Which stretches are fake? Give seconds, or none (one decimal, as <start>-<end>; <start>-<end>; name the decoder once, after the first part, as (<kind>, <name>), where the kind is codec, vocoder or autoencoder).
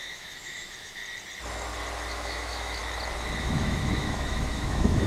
0.0-1.0 (autoencoder, DAC-VAE); 2.1-2.8; 3.4-5.1